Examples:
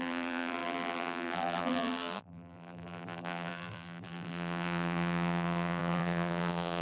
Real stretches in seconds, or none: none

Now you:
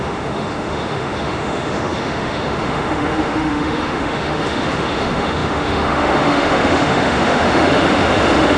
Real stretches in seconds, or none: none

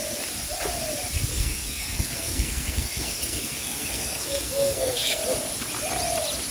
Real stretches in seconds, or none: 0.0-1.3; 5.2-6.5

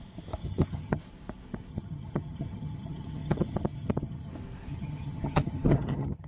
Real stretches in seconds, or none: 0.0-0.4; 1.0-1.7; 4.3-4.7